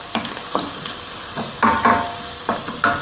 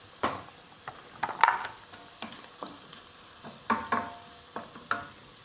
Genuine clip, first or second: first